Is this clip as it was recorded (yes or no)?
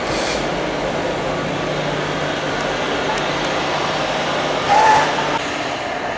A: yes